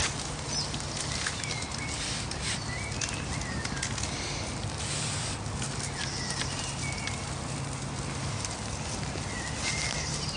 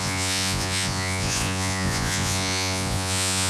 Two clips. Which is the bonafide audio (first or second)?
first